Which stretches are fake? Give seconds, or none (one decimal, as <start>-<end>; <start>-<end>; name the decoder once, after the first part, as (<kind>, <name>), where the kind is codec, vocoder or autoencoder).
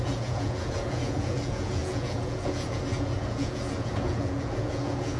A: 0.0-5.2 (vocoder, Vocos)